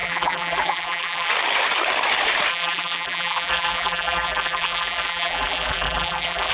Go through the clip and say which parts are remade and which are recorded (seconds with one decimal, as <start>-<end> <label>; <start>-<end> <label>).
0.0-1.3 remade; 1.3-2.5 recorded; 2.5-6.5 remade